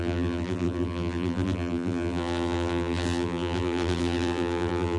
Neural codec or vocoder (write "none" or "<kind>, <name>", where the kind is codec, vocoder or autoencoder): vocoder, BigVGAN v2